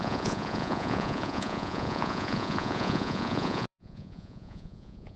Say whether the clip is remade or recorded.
remade